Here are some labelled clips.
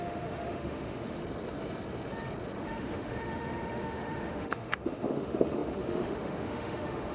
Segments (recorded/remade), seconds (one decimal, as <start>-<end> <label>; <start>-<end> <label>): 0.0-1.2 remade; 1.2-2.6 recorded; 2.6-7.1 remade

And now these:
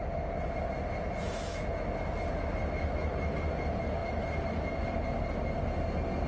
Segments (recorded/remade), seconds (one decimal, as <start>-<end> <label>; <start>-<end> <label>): 0.0-6.3 recorded

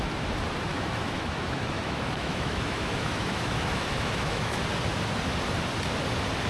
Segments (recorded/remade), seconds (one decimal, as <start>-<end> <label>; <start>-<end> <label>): 0.0-0.7 recorded; 0.7-4.6 remade; 4.6-6.5 recorded

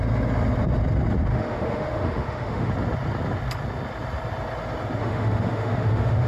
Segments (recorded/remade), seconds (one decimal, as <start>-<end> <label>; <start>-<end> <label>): 0.0-1.3 recorded; 1.3-2.7 remade; 2.7-5.0 recorded; 5.0-6.3 remade

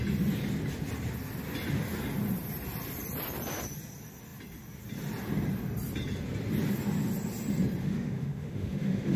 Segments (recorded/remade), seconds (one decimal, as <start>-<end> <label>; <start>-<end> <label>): 0.0-7.8 recorded; 7.8-9.2 remade